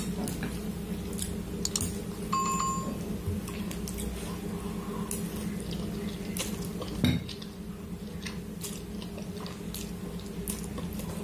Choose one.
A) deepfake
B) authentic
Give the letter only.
B